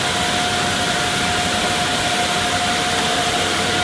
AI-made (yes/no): no